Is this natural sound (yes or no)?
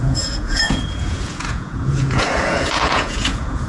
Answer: no